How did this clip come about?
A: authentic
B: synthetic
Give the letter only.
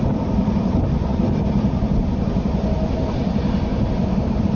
A